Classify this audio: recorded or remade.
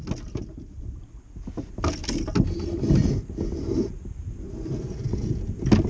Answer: recorded